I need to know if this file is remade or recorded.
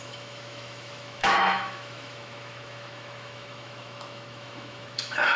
remade